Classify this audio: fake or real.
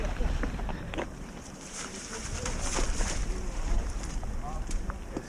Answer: fake